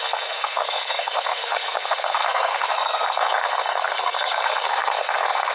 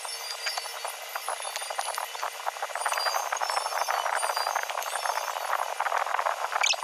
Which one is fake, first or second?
first